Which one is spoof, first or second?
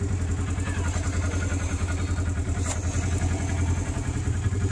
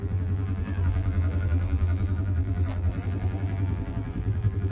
second